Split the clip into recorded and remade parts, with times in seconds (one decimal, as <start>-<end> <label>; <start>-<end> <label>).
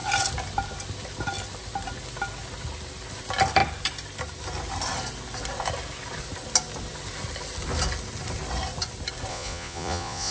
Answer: 0.0-9.3 recorded; 9.3-10.3 remade